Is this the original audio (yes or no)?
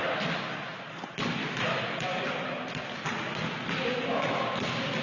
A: yes